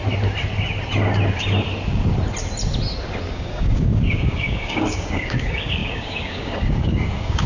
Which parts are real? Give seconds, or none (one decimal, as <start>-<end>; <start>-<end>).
0.0-3.3

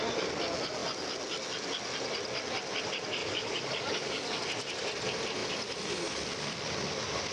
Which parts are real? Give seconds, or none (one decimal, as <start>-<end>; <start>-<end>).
0.0-3.2; 4.4-7.3

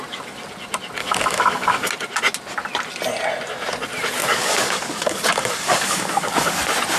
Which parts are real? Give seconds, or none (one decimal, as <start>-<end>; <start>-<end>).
0.0-1.0; 1.9-4.2; 6.6-7.0

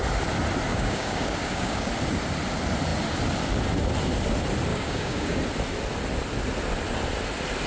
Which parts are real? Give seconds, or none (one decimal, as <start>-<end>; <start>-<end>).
0.0-0.7; 1.9-4.7; 5.4-7.7

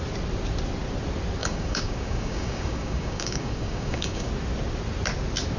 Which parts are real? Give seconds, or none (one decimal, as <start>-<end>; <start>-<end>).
0.0-1.4; 4.3-5.6

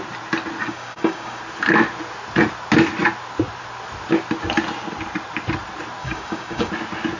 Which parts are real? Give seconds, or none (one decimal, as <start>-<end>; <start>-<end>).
0.0-0.6; 1.4-6.0; 6.7-7.2